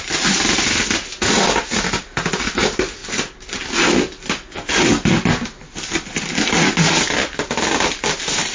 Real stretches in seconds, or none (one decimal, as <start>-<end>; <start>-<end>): 0.0-8.5